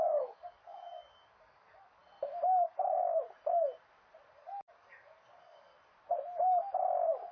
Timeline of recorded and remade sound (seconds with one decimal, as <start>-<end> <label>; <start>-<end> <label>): 0.0-2.0 remade; 2.0-2.6 recorded; 2.6-3.0 remade; 3.0-4.3 recorded; 4.3-5.7 remade; 5.7-7.3 recorded